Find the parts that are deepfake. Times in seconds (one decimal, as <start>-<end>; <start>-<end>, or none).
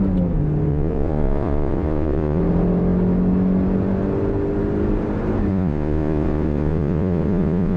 0.7-2.4; 5.5-7.8